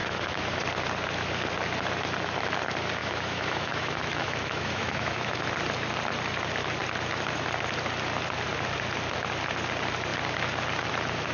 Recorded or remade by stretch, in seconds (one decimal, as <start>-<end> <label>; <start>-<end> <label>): 0.0-0.6 remade; 0.6-3.0 recorded; 3.0-5.5 remade; 5.5-11.3 recorded